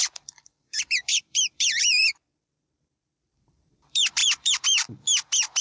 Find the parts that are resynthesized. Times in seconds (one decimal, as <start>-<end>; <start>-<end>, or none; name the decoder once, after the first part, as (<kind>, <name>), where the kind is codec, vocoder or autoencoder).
0.0-5.6 (vocoder, BigVGAN v2)